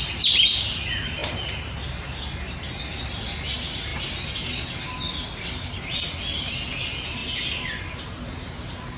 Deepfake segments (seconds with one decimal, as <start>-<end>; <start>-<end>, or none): none